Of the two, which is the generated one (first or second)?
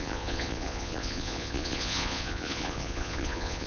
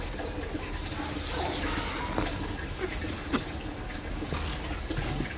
first